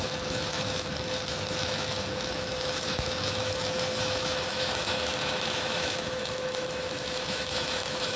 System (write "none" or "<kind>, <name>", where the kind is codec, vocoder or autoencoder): autoencoder, DAC-VAE